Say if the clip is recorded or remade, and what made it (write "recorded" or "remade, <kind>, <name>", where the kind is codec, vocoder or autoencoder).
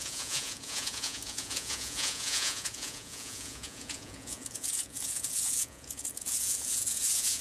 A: remade, vocoder, Vocos